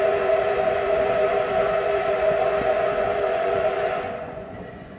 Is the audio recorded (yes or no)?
no